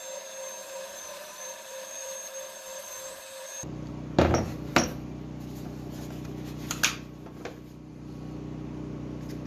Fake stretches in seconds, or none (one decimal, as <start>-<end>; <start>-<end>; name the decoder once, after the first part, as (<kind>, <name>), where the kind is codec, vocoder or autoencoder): 0.6-2.3 (vocoder, BigVGAN v2); 2.7-3.9